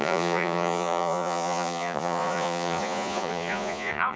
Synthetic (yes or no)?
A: yes